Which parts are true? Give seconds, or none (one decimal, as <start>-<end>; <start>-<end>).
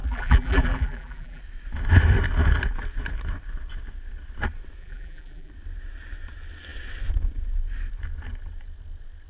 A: 1.4-4.8; 5.5-9.3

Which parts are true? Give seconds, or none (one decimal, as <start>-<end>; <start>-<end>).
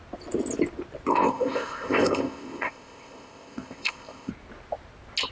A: 0.0-1.1; 4.3-5.3